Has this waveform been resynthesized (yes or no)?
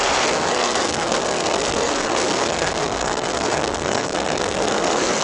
yes